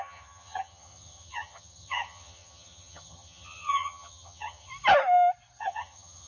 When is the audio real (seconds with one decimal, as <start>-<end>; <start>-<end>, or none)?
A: 4.7-5.6